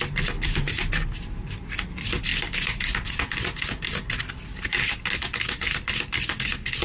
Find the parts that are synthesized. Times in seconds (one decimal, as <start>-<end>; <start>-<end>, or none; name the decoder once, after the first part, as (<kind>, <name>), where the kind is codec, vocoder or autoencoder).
none